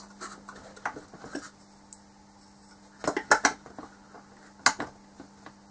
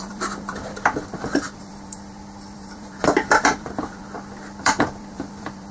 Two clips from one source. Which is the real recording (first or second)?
first